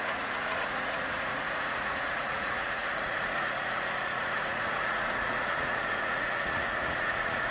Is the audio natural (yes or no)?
no